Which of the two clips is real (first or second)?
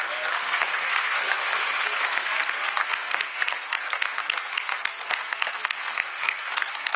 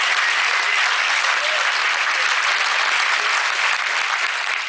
second